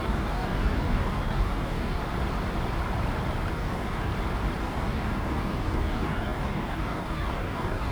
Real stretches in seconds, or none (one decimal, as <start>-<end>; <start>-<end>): 2.0-3.5; 4.1-4.6